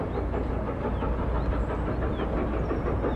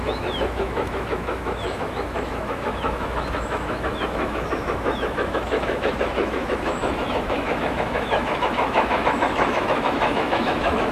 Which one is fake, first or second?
second